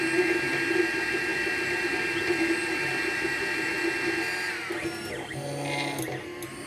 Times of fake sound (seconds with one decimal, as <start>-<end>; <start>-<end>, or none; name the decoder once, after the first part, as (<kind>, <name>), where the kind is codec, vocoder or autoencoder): none